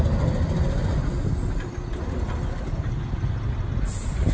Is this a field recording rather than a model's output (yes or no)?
yes